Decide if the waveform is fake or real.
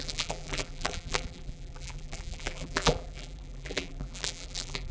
fake